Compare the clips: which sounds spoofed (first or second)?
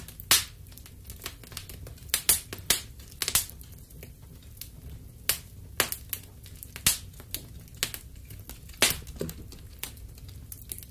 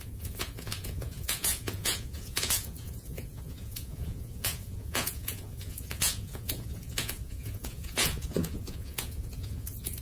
second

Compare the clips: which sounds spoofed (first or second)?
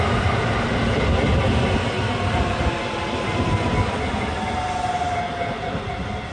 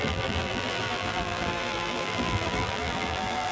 second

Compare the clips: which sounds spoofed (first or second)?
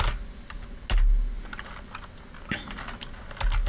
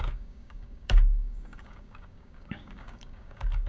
second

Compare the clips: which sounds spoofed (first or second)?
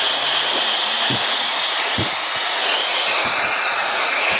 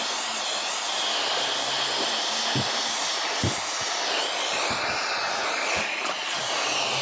first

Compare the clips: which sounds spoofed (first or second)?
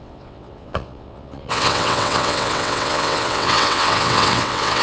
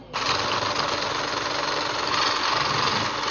first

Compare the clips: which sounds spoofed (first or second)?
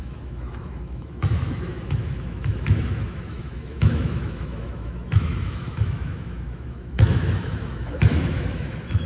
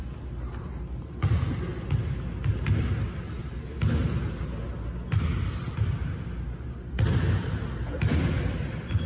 first